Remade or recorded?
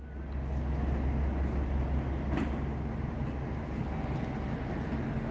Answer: recorded